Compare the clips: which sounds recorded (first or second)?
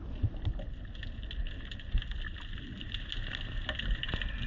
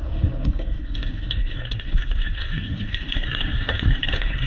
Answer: first